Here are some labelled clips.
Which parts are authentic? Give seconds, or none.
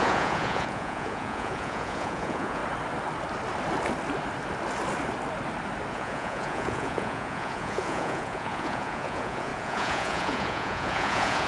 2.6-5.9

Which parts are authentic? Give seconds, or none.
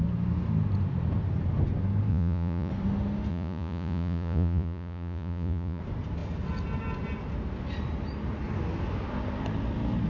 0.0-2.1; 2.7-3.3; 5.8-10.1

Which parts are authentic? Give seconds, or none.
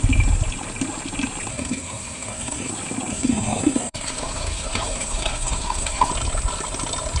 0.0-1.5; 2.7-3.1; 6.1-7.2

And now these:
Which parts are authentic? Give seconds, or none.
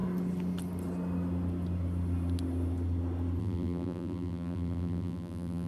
0.0-3.4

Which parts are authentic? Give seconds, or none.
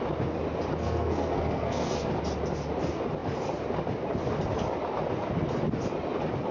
0.0-0.8; 2.1-6.5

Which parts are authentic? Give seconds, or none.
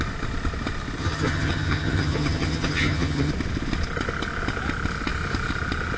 0.0-1.0; 3.3-6.0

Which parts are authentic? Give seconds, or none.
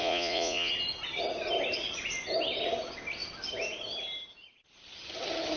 0.7-5.6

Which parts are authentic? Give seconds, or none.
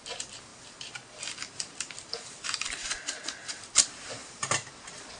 0.0-0.5; 3.6-4.2; 4.7-5.2